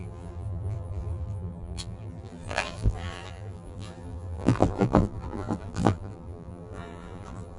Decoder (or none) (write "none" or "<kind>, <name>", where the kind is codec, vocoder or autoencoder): vocoder, BigVGAN v2